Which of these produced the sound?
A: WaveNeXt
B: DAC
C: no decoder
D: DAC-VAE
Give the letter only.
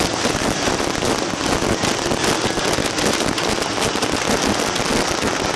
C